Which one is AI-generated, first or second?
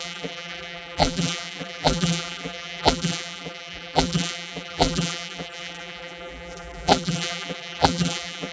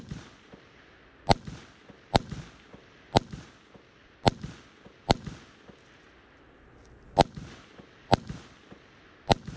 first